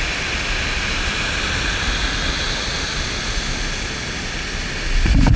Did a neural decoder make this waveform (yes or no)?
no